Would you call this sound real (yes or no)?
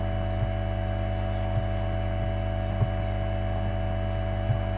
yes